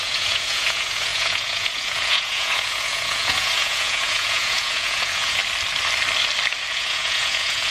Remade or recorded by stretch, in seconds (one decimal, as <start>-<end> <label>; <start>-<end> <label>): 0.0-5.4 remade; 5.4-6.7 recorded; 6.7-7.7 remade